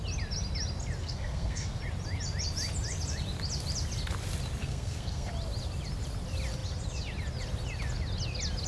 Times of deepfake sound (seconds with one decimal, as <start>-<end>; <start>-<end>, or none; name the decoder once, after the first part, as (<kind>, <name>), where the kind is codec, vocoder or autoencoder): 1.0-1.8 (codec, SNAC); 4.6-5.3